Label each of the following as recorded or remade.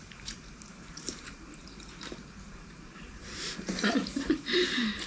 remade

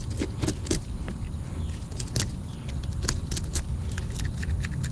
recorded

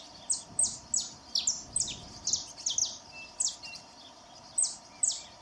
recorded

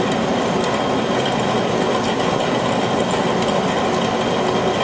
recorded